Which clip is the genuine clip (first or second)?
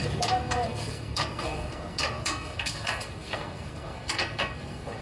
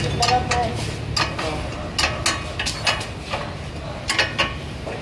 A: second